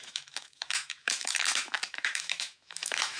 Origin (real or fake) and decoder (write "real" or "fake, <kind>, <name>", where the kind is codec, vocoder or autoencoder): fake, autoencoder, DAC-VAE